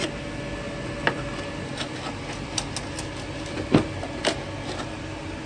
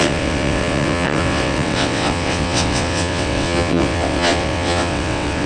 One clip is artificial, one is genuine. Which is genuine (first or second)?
first